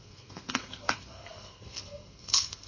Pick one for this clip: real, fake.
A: fake